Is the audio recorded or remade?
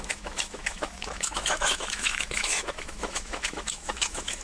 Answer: remade